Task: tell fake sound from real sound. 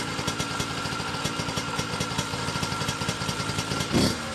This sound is fake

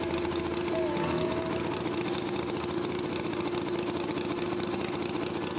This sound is real